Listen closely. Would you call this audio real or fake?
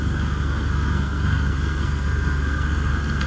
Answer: fake